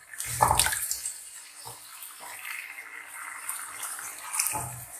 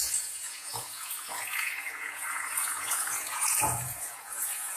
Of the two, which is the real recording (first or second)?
first